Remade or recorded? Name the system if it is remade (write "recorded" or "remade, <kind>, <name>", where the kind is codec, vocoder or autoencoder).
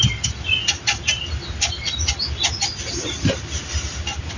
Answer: recorded